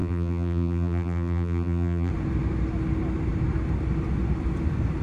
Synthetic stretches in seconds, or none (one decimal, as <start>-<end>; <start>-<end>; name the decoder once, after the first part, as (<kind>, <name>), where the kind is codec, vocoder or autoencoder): 0.0-2.1 (vocoder, BigVGAN v2)